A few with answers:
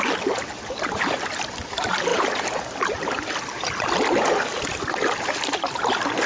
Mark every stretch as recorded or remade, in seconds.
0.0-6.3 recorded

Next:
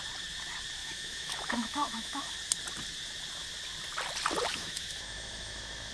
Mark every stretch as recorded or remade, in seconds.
0.0-0.8 recorded; 0.8-2.3 remade; 2.3-4.5 recorded; 4.5-5.9 remade